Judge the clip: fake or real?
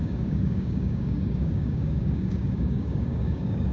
fake